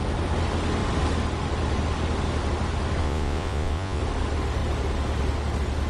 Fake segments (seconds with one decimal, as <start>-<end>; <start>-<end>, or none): 3.0-4.0